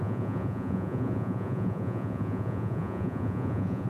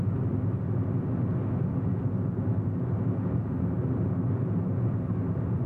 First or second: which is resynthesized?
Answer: first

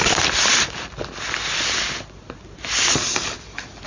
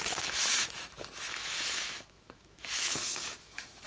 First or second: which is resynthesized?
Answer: second